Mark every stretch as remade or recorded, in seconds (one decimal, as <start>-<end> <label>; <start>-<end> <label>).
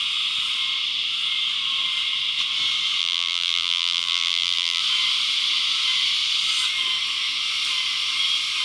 0.0-3.0 recorded; 3.0-4.8 remade; 4.8-8.6 recorded